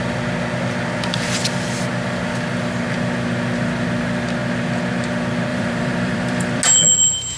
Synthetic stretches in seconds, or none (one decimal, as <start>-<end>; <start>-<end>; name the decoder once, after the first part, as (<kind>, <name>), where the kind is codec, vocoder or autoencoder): 5.5-6.6 (vocoder, BigVGAN v2)